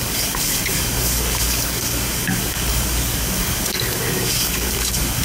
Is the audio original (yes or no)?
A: no